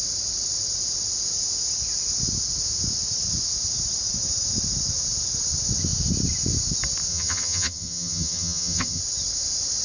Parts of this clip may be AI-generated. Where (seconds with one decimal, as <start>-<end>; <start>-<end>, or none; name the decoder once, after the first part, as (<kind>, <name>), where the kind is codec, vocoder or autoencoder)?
7.1-9.0 (vocoder, HiFi-GAN)